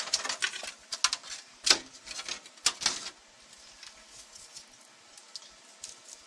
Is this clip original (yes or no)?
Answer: yes